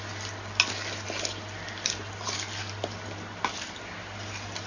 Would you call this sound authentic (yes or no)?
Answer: yes